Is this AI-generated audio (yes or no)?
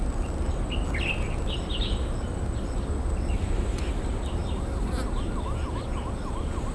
no